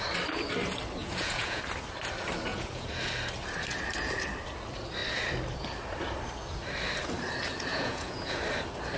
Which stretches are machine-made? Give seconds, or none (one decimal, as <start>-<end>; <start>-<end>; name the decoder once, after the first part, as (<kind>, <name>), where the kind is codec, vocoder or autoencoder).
1.0-1.6 (vocoder, Vocos); 2.5-3.0; 7.7-8.4